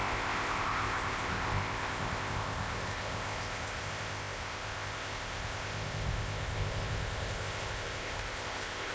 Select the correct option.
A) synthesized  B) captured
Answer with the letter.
A